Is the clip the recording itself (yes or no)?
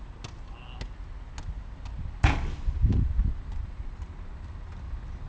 yes